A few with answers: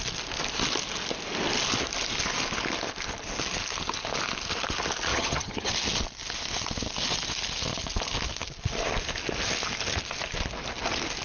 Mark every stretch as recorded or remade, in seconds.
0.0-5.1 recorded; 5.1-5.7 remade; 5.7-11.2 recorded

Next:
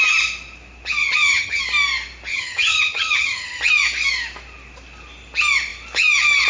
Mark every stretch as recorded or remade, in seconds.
0.0-1.0 recorded; 1.0-1.6 remade; 1.6-2.3 recorded; 2.3-3.6 remade; 3.6-6.5 recorded

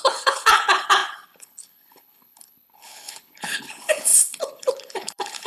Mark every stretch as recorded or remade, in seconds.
0.0-5.5 remade